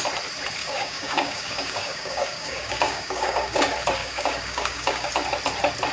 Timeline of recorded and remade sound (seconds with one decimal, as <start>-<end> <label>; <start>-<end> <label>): 0.0-0.6 recorded; 0.6-3.6 remade; 3.6-4.0 recorded; 4.0-5.1 remade; 5.1-5.9 recorded